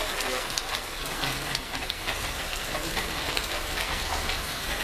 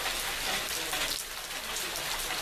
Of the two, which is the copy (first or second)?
first